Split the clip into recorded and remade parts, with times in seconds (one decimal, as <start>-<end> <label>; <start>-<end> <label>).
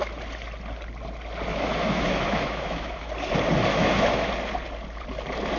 0.0-1.5 recorded; 1.5-3.1 remade; 3.1-3.7 recorded; 3.7-4.3 remade; 4.3-5.6 recorded